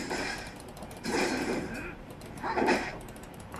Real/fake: fake